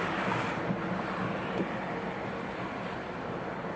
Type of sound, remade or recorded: recorded